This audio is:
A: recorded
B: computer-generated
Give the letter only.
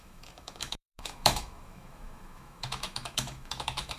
B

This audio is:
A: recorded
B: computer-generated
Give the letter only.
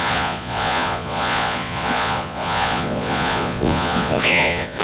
B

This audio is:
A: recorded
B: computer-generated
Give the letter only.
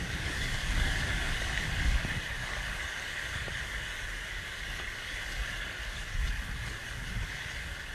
B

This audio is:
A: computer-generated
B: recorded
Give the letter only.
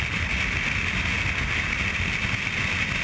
B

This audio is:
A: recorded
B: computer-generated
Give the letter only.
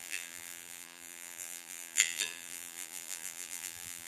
B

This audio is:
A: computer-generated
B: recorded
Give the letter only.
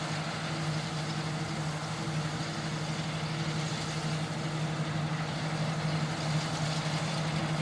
B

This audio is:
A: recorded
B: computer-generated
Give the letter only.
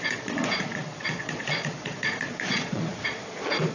B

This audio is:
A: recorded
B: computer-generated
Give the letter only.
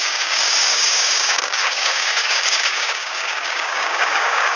B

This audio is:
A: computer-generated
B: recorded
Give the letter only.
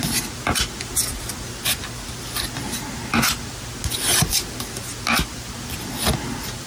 B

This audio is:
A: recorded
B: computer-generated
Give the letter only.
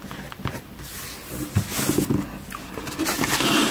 A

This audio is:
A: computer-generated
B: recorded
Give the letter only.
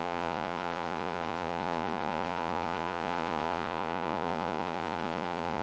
A